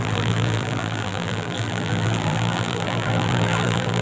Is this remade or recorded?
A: remade